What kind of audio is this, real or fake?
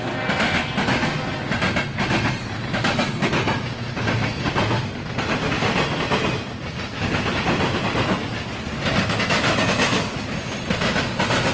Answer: real